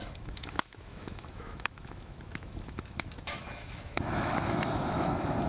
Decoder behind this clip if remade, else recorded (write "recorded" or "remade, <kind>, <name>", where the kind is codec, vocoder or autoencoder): remade, autoencoder, DAC-VAE